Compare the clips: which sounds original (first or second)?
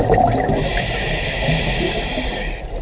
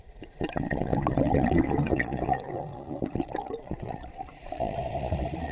first